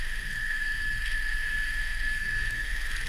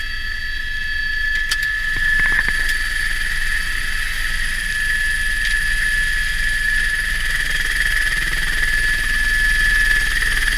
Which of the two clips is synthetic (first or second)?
first